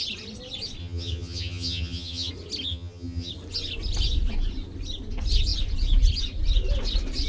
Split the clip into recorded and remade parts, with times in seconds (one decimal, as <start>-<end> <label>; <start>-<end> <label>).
0.0-0.8 recorded; 0.8-2.3 remade; 2.3-2.7 recorded; 2.7-3.3 remade; 3.3-7.3 recorded